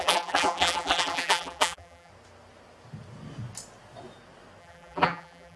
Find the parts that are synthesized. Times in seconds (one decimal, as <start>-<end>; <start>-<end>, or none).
0.0-2.1; 4.6-5.6